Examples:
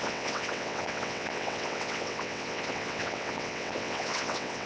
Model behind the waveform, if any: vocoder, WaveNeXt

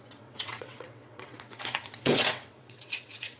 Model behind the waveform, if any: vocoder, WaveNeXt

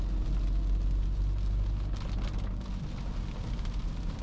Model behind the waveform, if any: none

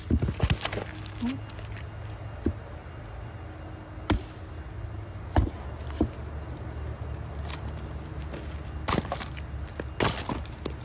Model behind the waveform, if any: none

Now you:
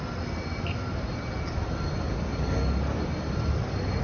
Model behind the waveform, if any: none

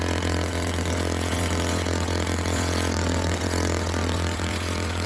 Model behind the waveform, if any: vocoder, WaveNeXt